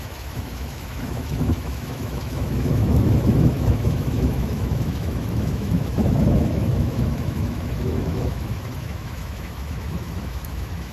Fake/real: fake